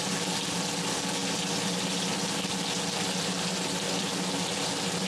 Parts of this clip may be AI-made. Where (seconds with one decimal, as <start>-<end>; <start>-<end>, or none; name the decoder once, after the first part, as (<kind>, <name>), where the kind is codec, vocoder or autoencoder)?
none